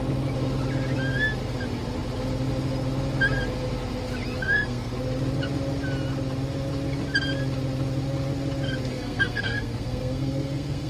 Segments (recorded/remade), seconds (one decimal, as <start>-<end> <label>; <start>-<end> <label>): 0.0-4.4 recorded; 4.4-4.9 remade; 4.9-8.9 recorded; 8.9-10.9 remade